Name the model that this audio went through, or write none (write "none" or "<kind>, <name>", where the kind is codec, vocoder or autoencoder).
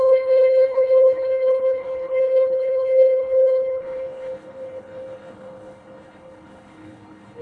codec, HILCodec